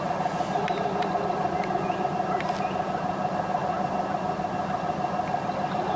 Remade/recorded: recorded